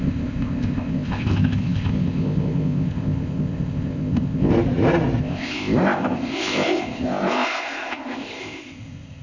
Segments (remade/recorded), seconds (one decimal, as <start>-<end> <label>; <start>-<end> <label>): 0.0-4.5 remade; 4.5-5.2 recorded; 5.2-9.2 remade